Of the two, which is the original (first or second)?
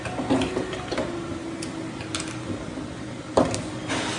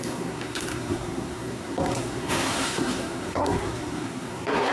first